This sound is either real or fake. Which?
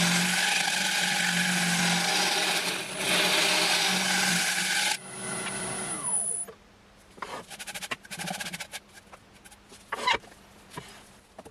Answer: real